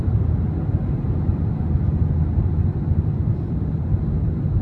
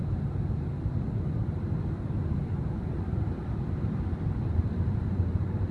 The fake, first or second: second